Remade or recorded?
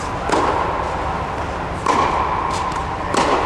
recorded